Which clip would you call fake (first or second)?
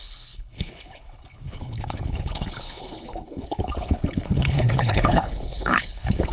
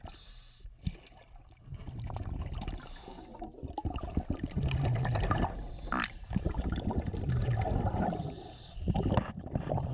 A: first